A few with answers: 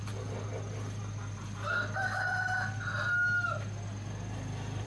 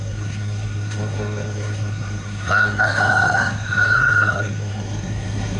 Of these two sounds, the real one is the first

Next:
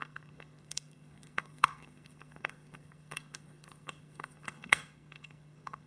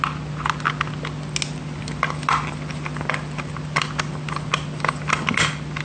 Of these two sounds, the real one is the second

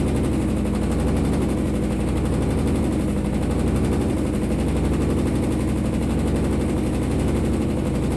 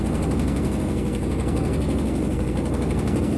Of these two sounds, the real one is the first